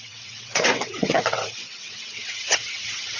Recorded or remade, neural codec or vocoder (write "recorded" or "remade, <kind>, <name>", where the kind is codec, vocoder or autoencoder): remade, vocoder, WaveNeXt